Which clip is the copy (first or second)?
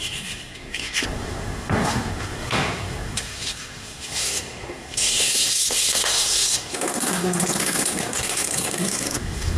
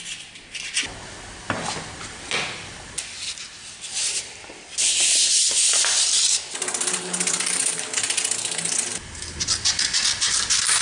first